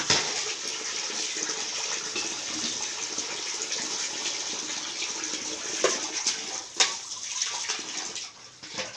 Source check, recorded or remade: recorded